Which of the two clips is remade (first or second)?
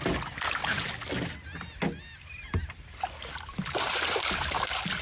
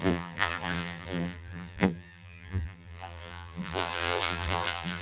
second